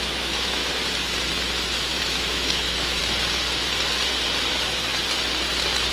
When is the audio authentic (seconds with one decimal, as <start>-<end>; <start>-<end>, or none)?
0.6-2.0; 3.0-4.5; 4.9-5.9